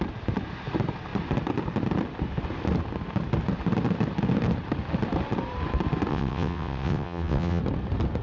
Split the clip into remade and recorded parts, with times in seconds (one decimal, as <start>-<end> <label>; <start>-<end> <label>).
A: 0.0-6.1 recorded; 6.1-7.6 remade; 7.6-8.2 recorded